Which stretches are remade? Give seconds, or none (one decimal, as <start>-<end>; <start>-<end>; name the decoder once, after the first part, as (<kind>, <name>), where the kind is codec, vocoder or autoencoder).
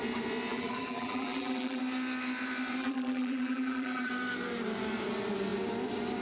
0.5-1.8 (vocoder, BigVGAN v2); 2.8-4.1